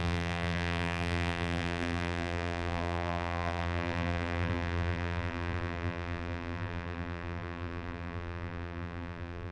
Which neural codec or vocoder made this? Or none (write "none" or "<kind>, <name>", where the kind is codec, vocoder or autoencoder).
vocoder, BigVGAN v2